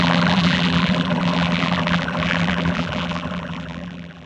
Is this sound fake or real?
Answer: fake